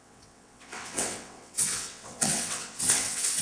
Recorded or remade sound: remade